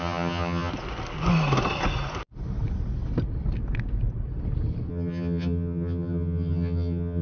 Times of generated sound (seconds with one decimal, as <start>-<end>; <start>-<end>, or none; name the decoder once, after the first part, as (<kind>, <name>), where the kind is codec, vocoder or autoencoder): 0.0-0.7 (vocoder, HiFi-GAN); 4.9-7.2